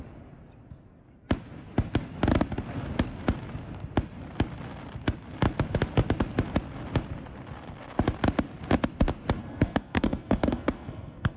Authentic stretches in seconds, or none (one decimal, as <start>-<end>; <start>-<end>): 0.0-9.4

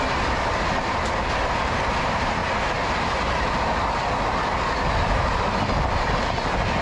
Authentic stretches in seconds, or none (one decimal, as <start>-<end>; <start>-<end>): 0.0-6.8

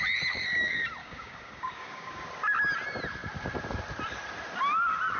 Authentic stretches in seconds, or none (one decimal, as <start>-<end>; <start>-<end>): 0.0-1.0; 2.2-5.2

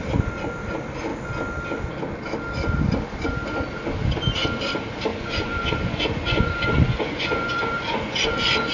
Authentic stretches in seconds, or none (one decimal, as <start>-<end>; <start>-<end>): 0.0-5.1

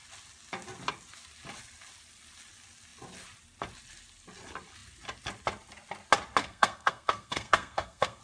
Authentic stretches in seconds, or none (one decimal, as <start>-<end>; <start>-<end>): 0.0-6.4